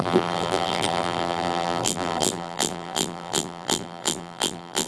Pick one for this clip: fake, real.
fake